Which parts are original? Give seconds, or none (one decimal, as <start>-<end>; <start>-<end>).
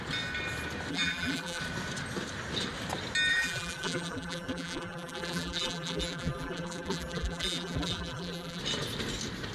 0.0-0.9; 1.6-3.3; 8.6-9.5